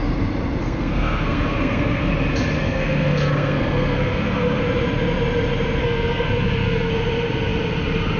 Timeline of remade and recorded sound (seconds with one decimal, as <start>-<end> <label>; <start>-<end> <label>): 0.0-0.6 recorded; 0.6-2.1 remade; 2.1-2.6 recorded; 2.6-4.6 remade; 4.6-5.8 recorded; 5.8-6.9 remade; 6.9-8.2 recorded